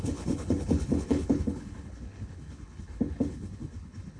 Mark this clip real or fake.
fake